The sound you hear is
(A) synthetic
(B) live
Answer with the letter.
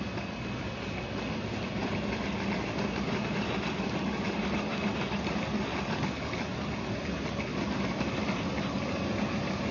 B